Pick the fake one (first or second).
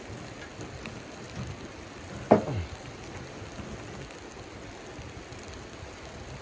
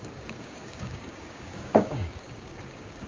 second